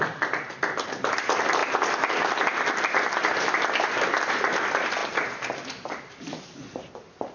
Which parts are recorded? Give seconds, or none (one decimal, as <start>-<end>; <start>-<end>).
0.0-7.3